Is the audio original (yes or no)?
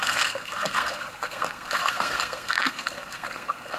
no